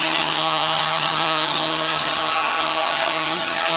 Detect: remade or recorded remade